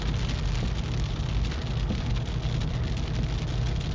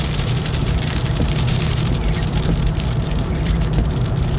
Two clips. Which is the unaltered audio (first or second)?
first